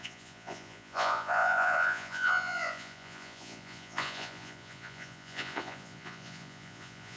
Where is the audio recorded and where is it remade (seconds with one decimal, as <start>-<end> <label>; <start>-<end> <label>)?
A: 0.0-7.2 remade